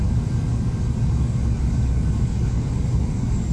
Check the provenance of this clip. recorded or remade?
remade